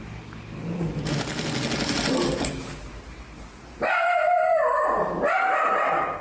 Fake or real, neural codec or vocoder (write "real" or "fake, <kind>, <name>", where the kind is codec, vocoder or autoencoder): real